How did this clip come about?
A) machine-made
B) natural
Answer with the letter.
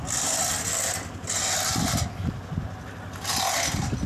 B